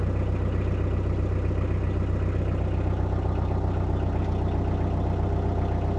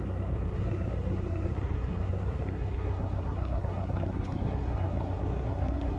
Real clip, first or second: first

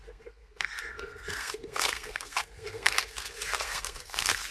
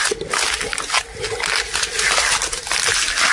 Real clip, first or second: second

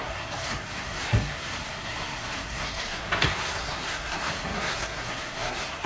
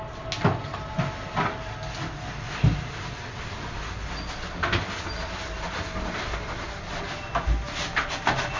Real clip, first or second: second